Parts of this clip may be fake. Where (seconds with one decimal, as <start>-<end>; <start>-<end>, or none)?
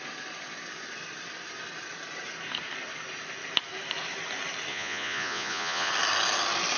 4.7-5.9